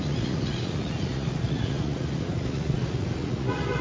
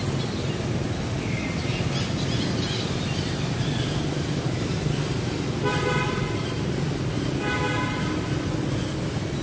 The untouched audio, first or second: second